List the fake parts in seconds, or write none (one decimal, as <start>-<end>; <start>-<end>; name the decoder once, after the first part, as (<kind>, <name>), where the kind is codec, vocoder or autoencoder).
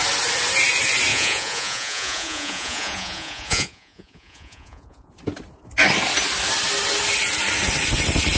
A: 1.1-5.1 (vocoder, Vocos)